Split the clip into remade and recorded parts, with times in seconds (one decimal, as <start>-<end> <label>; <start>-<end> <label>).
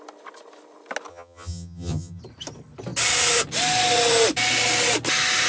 0.0-1.1 recorded; 1.1-2.2 remade; 2.2-5.5 recorded